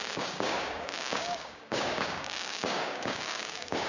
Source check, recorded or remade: remade